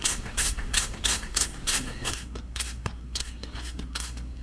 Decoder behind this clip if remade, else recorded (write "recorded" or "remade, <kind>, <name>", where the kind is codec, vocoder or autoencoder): remade, codec, SNAC